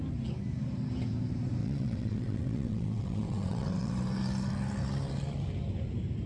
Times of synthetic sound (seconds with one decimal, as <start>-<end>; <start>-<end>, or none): 1.6-3.9

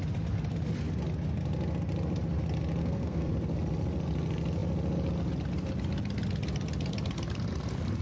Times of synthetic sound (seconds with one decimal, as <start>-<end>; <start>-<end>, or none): 2.8-3.3

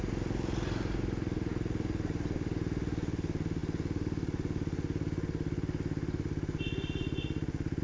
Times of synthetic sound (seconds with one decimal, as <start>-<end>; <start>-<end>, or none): none

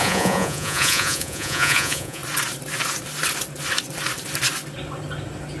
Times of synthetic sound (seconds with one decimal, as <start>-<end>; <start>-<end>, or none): 0.0-2.2

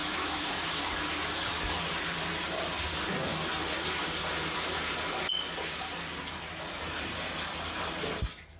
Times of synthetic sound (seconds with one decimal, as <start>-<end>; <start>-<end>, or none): 0.0-0.7

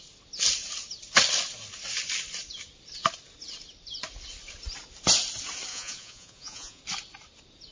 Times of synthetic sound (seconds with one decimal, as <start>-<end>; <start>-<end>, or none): 5.7-6.8

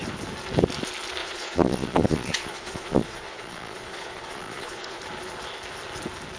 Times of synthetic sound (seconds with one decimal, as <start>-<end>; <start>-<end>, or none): 1.2-5.0

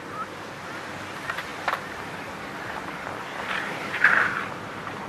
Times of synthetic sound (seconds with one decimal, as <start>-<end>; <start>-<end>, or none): none